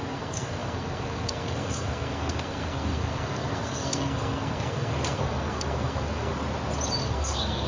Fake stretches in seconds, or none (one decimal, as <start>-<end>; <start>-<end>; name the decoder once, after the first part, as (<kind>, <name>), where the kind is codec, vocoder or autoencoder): 0.0-6.3 (codec, SNAC); 7.0-7.7